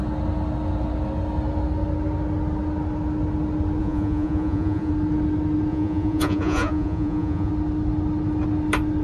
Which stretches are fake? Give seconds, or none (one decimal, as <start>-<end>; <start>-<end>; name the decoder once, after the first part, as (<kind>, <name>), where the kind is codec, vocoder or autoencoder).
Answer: 3.8-4.9 (vocoder, Vocos); 5.7-7.5